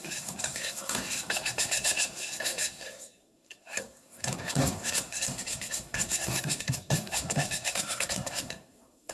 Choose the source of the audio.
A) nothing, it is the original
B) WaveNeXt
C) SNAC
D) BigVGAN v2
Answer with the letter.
C